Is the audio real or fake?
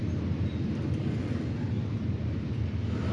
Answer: real